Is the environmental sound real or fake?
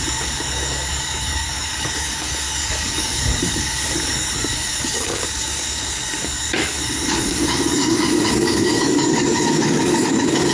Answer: fake